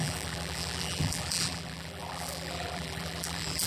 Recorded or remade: remade